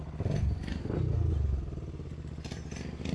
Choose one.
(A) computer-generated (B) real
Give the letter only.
B